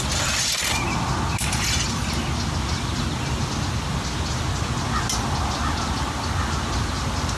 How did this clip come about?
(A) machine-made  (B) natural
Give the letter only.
B